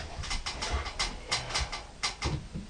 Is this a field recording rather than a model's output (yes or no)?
yes